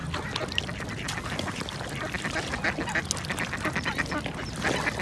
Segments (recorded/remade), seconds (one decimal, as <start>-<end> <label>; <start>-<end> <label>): 0.0-5.0 recorded